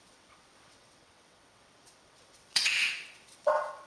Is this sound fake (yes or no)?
yes